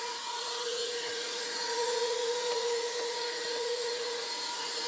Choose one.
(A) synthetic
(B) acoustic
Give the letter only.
A